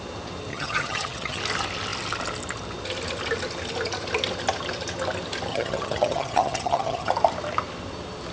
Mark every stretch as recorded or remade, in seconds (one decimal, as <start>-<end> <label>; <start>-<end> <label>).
0.0-0.5 recorded; 0.5-1.4 remade; 1.4-5.5 recorded; 5.5-7.1 remade; 7.1-8.3 recorded